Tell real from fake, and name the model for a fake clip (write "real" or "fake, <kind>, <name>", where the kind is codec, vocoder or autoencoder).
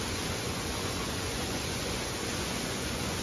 fake, vocoder, Vocos